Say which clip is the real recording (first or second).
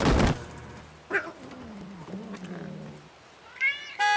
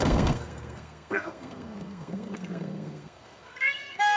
first